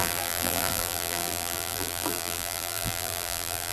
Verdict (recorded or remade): remade